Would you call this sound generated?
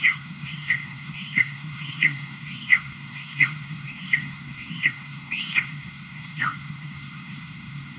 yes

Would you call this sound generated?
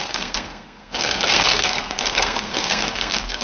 yes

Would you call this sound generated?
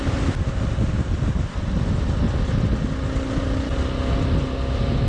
no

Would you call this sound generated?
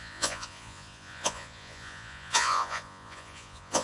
yes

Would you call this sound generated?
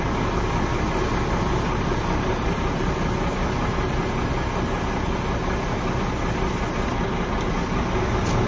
no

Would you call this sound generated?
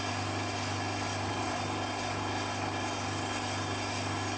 no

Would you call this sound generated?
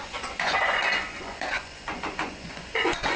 yes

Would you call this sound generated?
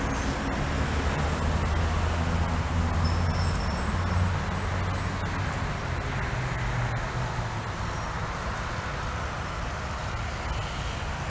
no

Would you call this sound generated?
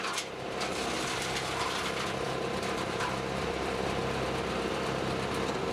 yes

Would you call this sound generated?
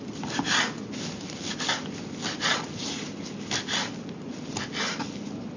no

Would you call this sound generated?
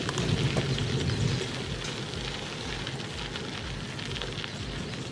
no